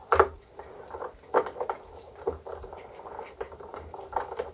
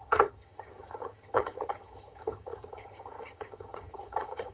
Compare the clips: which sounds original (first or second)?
first